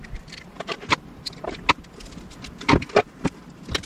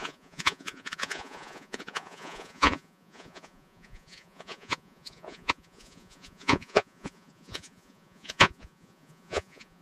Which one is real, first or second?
first